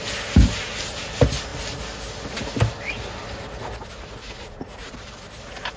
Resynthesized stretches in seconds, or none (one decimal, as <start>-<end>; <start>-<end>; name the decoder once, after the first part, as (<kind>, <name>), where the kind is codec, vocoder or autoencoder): 4.2-4.9 (vocoder, Vocos)